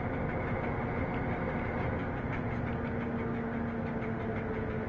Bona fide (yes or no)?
yes